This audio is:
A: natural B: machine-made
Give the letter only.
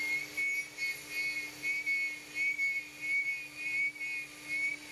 A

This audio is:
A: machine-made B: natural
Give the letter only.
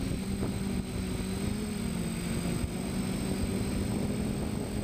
B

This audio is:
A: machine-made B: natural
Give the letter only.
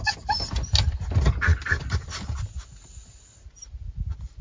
B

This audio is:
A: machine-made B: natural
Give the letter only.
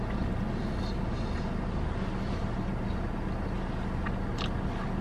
B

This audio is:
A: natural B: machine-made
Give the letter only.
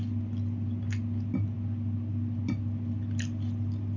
A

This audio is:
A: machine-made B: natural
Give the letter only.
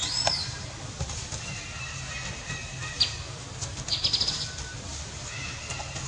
B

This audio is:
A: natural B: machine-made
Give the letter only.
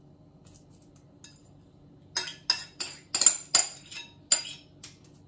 A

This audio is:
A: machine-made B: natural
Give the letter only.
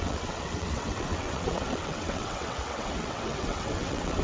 A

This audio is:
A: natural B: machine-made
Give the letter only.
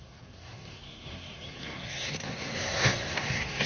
B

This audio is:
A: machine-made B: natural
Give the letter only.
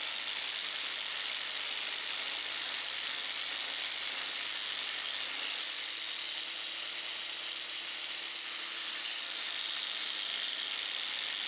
B